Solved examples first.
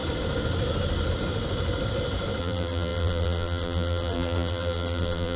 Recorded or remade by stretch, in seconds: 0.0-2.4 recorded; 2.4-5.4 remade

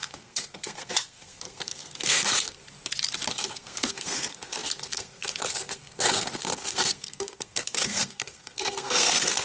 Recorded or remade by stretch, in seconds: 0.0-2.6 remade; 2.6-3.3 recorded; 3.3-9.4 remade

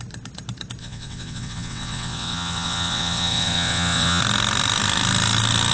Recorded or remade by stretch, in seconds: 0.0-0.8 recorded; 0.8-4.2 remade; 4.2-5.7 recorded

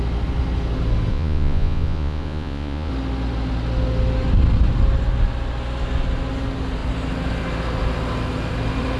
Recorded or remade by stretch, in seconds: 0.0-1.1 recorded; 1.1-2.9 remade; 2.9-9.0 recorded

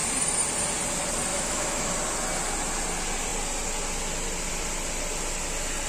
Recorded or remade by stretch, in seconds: 0.0-1.3 recorded; 1.3-1.9 remade; 1.9-5.9 recorded

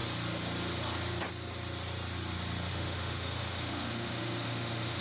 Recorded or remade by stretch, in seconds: 0.0-2.7 recorded; 2.7-5.0 remade

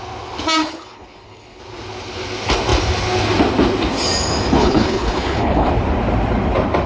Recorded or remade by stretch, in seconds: 0.0-0.6 recorded; 0.6-1.6 remade; 1.6-4.6 recorded; 4.6-5.7 remade; 5.7-6.9 recorded